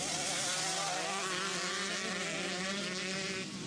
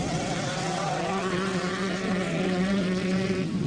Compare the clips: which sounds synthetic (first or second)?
second